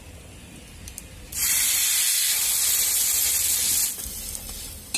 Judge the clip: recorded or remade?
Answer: remade